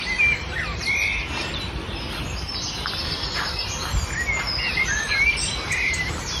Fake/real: real